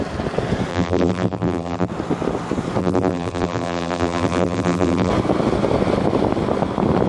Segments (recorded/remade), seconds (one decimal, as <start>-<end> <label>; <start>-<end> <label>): 0.0-0.7 recorded; 0.7-1.9 remade; 1.9-2.8 recorded; 2.8-5.1 remade; 5.1-7.1 recorded

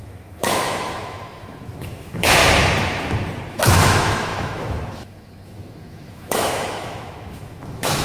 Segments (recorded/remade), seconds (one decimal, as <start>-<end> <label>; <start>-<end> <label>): 0.0-2.4 remade; 2.4-3.5 recorded; 3.5-8.0 remade